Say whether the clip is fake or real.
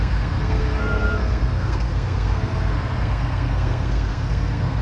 fake